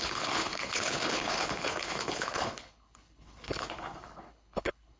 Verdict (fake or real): fake